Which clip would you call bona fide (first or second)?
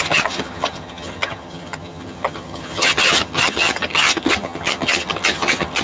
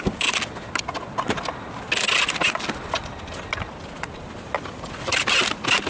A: second